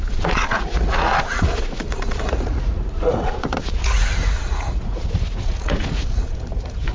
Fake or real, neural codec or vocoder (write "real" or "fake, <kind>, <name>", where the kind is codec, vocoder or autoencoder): fake, vocoder, Vocos